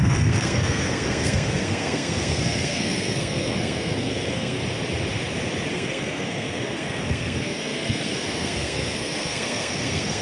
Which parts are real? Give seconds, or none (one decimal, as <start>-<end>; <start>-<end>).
4.6-5.7